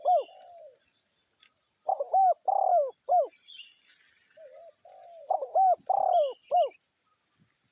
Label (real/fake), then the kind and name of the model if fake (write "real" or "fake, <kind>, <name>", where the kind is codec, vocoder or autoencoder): real